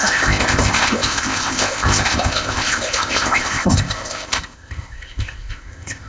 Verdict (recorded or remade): remade